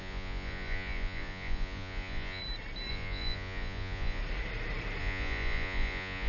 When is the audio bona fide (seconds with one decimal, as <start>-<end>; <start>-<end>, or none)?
2.4-2.9; 4.2-5.0